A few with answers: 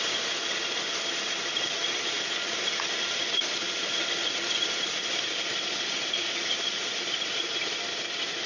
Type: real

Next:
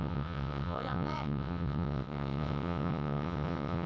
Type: fake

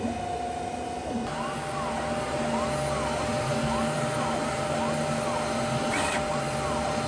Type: real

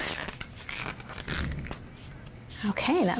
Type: real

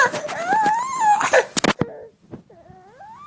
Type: real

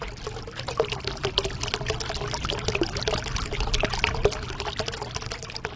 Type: real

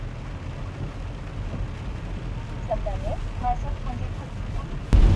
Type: real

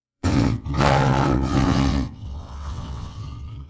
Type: fake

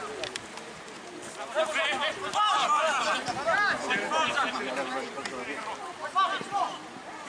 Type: real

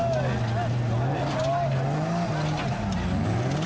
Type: real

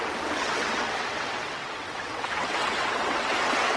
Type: fake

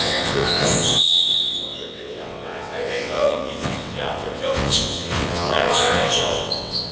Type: fake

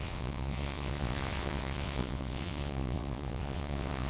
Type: fake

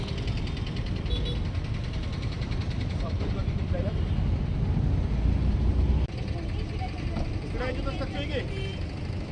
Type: real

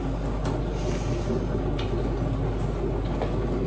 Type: real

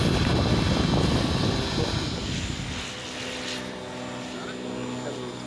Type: real